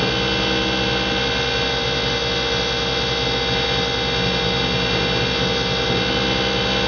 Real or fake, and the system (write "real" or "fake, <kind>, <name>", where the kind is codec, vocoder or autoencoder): real